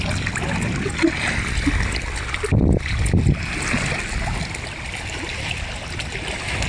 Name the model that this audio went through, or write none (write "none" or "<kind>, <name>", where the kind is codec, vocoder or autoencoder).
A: none